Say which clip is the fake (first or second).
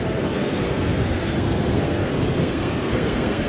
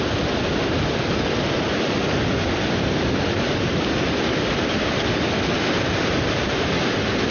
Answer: first